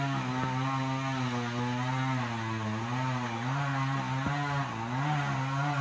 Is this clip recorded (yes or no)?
yes